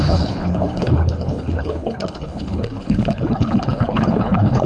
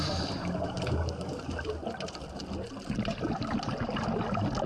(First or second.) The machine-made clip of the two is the first